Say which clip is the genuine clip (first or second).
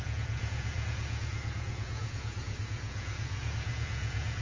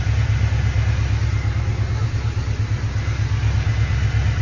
second